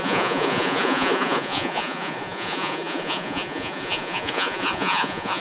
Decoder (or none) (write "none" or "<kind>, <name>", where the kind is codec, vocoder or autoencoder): vocoder, Vocos